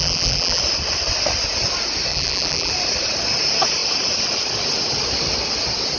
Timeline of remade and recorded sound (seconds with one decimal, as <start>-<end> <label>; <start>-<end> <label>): 0.0-0.6 remade; 0.6-2.1 recorded; 2.1-2.7 remade; 2.7-6.0 recorded